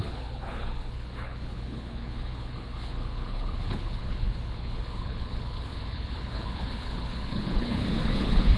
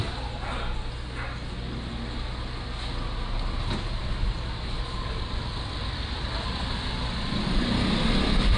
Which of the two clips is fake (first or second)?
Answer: first